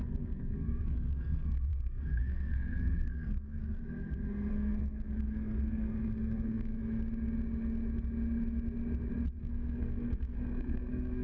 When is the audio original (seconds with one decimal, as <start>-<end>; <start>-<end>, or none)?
3.6-4.5; 6.7-9.4